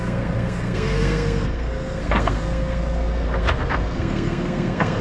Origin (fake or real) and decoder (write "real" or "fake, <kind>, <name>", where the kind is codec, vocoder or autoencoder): fake, codec, SNAC